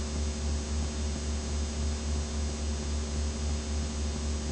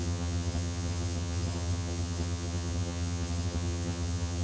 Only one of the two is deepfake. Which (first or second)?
second